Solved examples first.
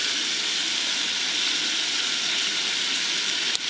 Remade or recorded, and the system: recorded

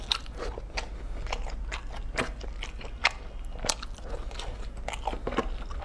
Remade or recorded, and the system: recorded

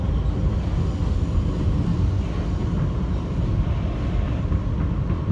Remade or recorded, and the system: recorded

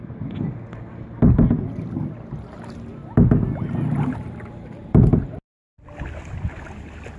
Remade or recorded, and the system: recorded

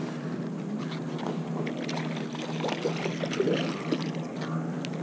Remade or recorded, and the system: recorded